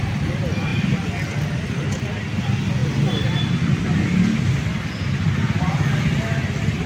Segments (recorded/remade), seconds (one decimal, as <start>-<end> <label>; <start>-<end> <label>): 0.0-6.9 recorded